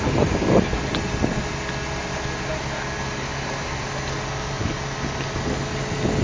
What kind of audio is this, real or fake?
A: real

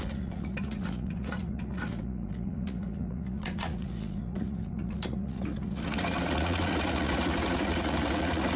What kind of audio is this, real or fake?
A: fake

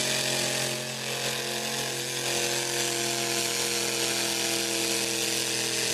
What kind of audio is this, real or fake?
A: real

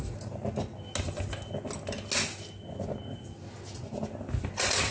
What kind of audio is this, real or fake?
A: real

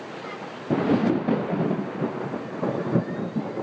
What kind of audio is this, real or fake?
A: real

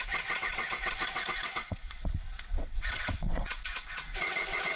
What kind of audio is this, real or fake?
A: fake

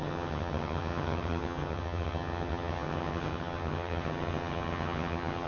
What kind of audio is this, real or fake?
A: fake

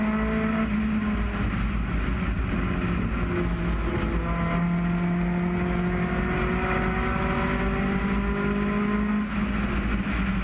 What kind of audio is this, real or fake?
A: real